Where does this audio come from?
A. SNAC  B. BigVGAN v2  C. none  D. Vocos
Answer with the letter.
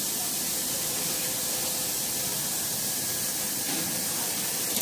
B